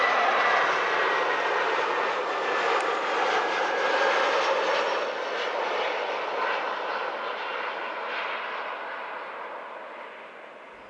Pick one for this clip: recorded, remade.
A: recorded